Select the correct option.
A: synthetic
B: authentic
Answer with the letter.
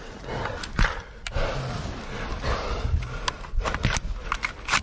B